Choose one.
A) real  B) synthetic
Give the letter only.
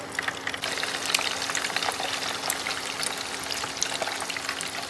A